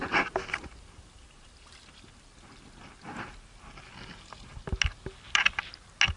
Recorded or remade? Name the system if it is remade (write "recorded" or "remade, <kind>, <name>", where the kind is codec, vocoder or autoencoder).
recorded